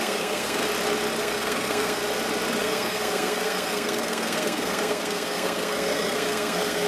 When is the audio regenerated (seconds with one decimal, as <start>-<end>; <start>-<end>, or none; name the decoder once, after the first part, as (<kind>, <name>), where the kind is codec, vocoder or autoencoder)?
0.0-0.6 (codec, SNAC); 1.2-2.0; 2.6-6.9